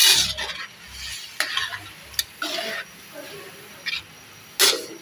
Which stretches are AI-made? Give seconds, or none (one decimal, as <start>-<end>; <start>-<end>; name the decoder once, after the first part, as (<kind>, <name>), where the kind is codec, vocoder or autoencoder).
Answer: none